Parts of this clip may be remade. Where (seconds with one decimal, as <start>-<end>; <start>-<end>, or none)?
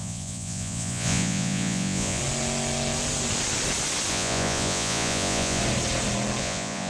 0.0-2.2; 4.1-5.6; 6.4-6.9